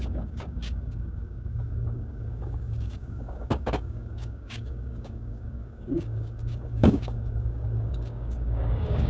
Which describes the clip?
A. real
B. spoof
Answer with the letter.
B